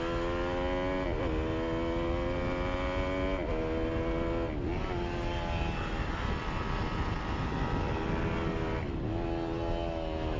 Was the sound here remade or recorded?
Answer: recorded